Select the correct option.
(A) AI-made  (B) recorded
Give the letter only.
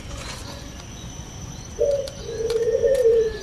A